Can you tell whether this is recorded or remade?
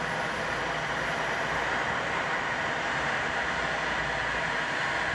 recorded